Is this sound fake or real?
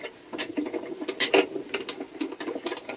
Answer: real